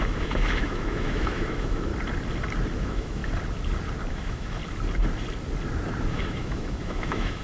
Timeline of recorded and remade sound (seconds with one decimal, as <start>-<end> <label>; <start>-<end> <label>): 0.0-1.9 remade; 1.9-2.8 recorded; 2.8-3.2 remade; 3.2-4.1 recorded; 4.1-4.6 remade; 4.6-6.1 recorded; 6.1-7.4 remade